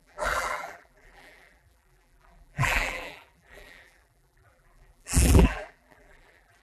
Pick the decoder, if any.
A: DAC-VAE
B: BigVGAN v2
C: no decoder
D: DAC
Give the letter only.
B